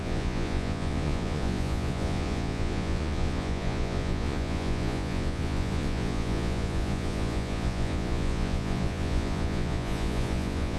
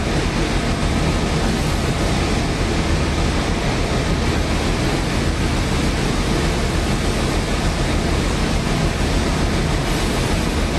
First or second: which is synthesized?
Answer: first